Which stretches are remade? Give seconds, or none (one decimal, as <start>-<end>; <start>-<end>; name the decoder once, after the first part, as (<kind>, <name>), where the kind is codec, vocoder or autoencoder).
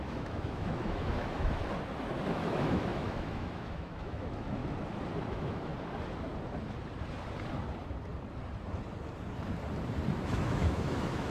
0.0-1.6 (autoencoder, DAC-VAE); 2.3-4.6; 5.3-5.7; 10.2-11.3